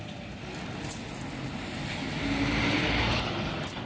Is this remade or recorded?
recorded